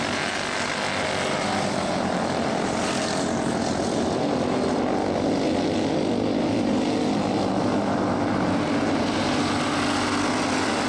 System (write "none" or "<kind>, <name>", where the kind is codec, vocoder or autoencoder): none